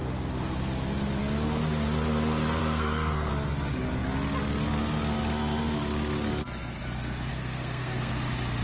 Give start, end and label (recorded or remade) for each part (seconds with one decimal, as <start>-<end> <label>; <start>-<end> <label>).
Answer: 0.0-2.6 recorded; 2.6-3.3 remade; 3.3-7.3 recorded; 7.3-8.1 remade; 8.1-8.6 recorded